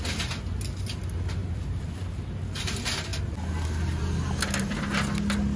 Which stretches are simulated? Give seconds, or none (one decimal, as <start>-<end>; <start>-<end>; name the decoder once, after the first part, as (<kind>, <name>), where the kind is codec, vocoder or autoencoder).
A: 1.4-2.2 (vocoder, BigVGAN v2)